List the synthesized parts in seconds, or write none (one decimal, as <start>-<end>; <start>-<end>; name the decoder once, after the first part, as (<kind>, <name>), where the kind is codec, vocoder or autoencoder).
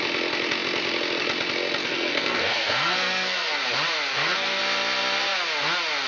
1.8-3.6 (codec, SNAC); 4.1-4.6